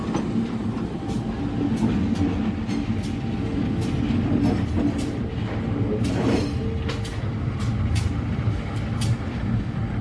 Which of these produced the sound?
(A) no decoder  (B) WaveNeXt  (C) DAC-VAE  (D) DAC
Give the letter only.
A